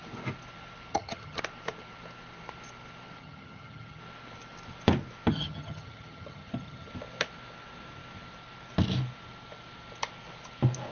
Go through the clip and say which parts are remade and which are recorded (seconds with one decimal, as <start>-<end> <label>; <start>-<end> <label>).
0.0-0.9 recorded; 0.9-1.4 remade; 1.4-3.2 recorded; 3.2-4.0 remade; 4.0-5.3 recorded; 5.3-6.9 remade; 6.9-10.9 recorded